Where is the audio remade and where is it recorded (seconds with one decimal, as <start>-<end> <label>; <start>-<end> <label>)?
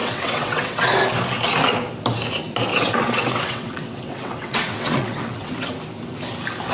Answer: 0.0-0.9 remade; 0.9-2.7 recorded; 2.7-5.7 remade; 5.7-6.7 recorded